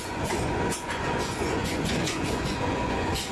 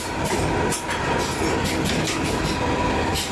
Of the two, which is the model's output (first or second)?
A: first